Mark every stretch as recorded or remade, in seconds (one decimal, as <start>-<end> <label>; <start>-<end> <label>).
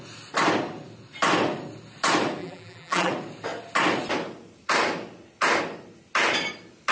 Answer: 0.0-2.4 recorded; 2.4-3.1 remade; 3.1-6.9 recorded